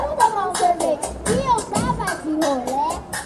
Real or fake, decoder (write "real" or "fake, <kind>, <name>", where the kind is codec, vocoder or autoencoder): real